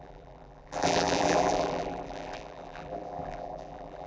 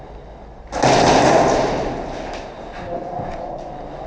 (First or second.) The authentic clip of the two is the second